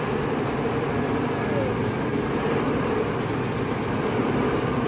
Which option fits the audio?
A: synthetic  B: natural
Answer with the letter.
A